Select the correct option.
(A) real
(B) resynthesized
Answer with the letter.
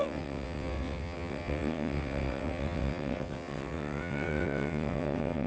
B